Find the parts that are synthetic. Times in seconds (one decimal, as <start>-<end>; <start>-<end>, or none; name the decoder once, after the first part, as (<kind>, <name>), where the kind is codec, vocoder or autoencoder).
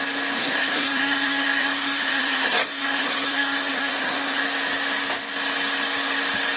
0.4-4.4 (codec, SNAC)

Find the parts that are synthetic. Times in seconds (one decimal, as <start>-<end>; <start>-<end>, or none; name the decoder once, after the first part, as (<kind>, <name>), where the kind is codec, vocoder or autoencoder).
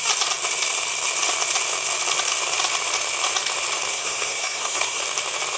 3.9-5.0 (codec, SNAC)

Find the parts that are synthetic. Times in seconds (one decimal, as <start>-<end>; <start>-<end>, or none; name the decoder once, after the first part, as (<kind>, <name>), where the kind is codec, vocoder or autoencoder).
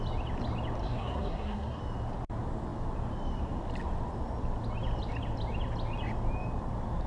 0.8-1.8 (codec, SNAC)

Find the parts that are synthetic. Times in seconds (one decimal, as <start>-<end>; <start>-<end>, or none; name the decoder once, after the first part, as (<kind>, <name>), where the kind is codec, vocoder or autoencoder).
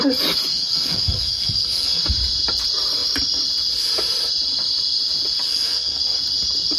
0.5-2.0 (codec, SNAC); 5.5-6.0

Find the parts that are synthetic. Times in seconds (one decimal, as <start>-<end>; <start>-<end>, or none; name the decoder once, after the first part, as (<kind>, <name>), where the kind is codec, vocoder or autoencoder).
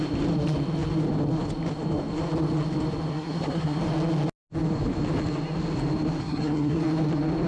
3.1-3.8 (codec, SNAC); 6.2-6.8